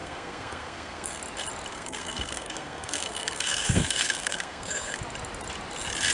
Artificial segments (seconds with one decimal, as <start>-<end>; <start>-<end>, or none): 0.0-1.2; 1.7-5.0